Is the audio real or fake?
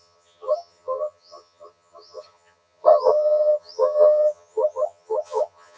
fake